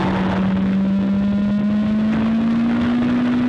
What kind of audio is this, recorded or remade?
recorded